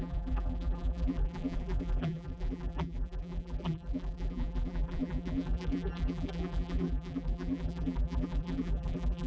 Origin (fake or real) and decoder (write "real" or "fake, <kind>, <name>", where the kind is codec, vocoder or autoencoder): fake, vocoder, BigVGAN v2